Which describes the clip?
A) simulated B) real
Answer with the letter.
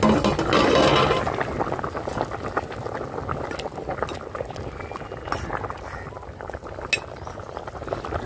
B